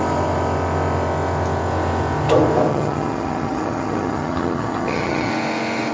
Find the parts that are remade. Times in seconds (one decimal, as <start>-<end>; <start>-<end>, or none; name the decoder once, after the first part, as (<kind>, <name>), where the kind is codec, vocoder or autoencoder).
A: 2.7-5.3 (vocoder, HiFi-GAN)